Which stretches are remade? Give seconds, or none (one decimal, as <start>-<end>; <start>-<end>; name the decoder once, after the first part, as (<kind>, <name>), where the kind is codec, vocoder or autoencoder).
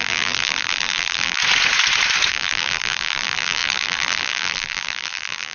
0.0-1.4 (vocoder, BigVGAN v2); 2.3-5.5